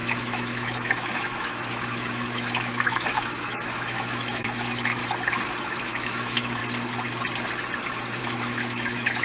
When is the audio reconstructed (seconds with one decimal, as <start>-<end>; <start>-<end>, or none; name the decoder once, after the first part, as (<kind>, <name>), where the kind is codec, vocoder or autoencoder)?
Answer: 0.0-5.0 (autoencoder, DAC-VAE); 5.6-6.6; 8.2-9.2